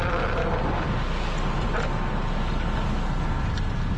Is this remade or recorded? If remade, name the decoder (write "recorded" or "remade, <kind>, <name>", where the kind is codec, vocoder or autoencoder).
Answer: recorded